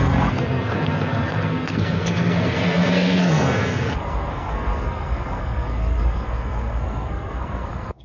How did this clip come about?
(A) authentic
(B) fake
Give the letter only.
B